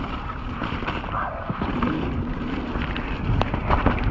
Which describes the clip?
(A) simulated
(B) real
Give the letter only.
B